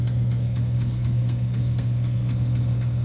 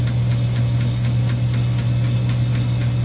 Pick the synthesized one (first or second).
first